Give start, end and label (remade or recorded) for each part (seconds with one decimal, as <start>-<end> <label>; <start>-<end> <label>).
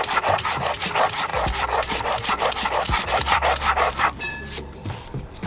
0.0-5.5 remade